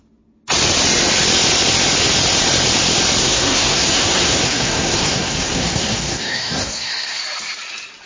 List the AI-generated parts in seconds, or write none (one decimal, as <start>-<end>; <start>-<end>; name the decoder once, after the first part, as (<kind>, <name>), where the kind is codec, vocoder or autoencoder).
3.2-7.2 (codec, SNAC)